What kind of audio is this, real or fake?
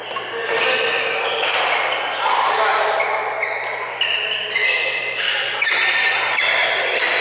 real